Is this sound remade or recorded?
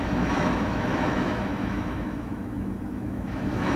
remade